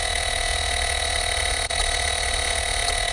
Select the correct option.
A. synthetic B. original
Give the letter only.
A